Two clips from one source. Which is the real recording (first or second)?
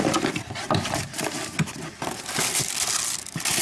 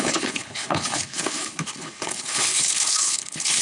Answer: first